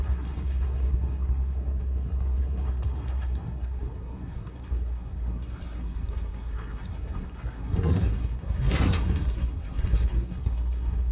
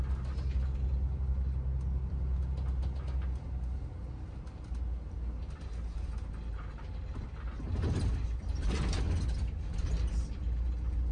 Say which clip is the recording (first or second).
second